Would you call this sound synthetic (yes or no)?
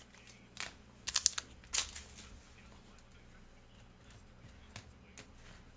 no